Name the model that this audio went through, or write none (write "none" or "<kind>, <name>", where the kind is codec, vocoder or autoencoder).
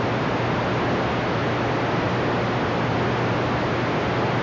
none